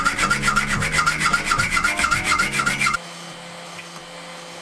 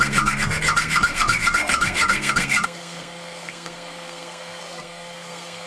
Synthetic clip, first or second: second